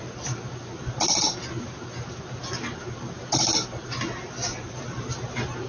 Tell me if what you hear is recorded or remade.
recorded